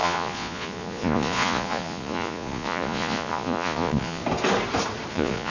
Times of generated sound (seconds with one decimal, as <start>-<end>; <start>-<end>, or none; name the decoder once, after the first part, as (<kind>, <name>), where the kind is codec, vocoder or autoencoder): 0.0-4.2 (vocoder, Vocos); 5.1-5.5